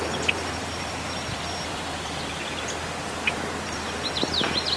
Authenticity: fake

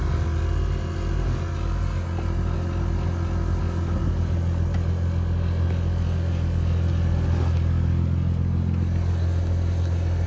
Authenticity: real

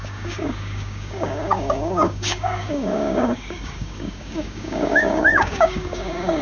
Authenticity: fake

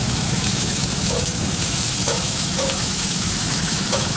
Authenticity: fake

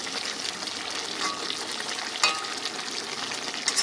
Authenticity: real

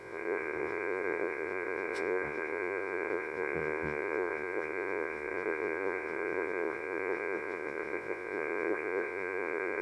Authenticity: fake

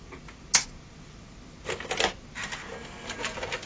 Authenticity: real